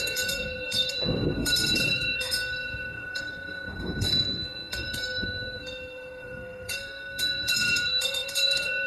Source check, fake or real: fake